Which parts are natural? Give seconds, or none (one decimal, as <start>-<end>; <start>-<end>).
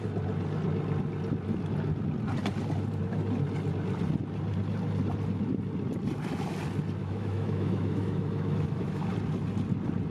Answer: 0.0-7.0; 9.1-10.1